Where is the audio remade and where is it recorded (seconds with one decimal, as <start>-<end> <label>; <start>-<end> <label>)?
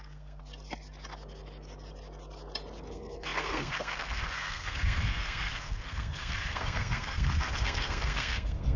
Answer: 0.0-0.4 remade; 0.4-2.9 recorded; 2.9-8.8 remade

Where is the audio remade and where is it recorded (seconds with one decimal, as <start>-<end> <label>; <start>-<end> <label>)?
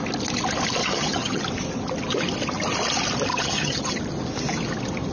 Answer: 0.0-0.8 recorded; 0.8-1.4 remade; 1.4-3.3 recorded; 3.3-4.0 remade; 4.0-5.1 recorded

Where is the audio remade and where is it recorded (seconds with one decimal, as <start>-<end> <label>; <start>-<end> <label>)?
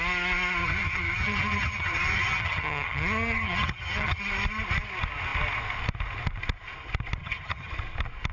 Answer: 0.0-0.6 recorded; 0.6-4.2 remade; 4.2-7.2 recorded; 7.2-7.7 remade; 7.7-8.3 recorded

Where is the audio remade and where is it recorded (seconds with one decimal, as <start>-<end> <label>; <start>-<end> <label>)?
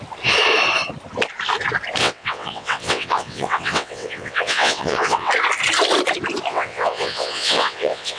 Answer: 0.0-2.0 recorded; 2.0-5.3 remade; 5.3-6.5 recorded; 6.5-8.2 remade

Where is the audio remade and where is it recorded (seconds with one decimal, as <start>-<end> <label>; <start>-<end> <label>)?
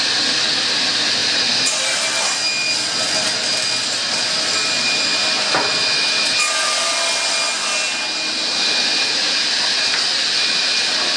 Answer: 0.0-11.2 recorded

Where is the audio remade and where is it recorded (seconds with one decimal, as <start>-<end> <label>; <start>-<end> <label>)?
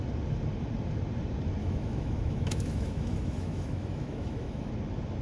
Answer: 0.0-1.6 recorded; 1.6-4.7 remade; 4.7-5.2 recorded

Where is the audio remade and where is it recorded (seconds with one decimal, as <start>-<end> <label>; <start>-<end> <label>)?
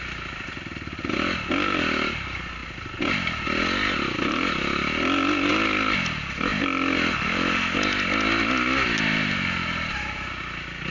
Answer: 0.0-10.9 recorded